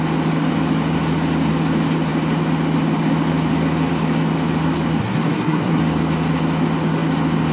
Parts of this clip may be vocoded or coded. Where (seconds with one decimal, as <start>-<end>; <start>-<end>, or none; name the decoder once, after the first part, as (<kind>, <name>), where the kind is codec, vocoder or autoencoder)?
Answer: 5.0-5.8 (codec, SNAC)